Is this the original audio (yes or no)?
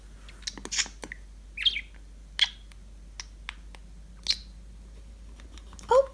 yes